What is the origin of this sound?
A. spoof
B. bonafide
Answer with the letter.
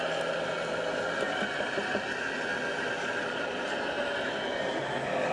B